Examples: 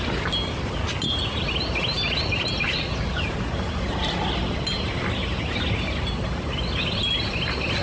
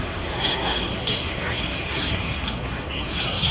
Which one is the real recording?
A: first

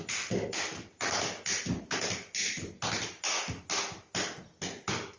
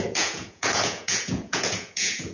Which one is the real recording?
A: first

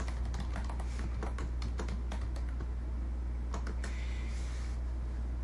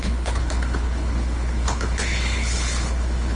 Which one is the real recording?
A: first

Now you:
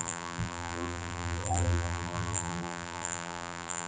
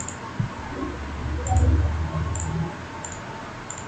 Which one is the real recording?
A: second